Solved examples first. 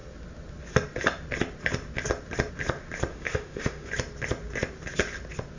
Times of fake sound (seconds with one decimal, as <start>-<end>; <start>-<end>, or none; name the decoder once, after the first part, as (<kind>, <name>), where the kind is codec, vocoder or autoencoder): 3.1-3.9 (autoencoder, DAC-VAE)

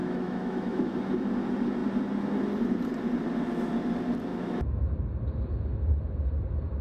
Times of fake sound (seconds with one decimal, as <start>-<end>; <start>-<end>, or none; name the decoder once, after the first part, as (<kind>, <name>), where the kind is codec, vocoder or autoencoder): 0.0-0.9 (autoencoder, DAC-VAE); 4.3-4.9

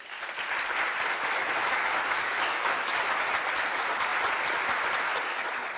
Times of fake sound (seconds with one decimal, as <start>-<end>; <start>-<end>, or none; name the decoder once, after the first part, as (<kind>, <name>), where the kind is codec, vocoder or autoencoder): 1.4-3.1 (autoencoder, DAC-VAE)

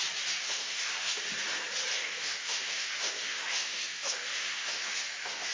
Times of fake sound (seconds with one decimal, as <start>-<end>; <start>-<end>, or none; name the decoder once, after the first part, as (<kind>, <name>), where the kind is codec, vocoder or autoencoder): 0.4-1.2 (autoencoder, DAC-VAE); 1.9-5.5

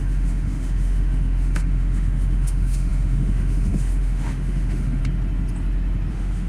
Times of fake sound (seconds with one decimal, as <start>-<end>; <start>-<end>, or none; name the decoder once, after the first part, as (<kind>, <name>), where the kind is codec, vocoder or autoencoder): 0.0-5.0 (autoencoder, DAC-VAE); 6.1-6.5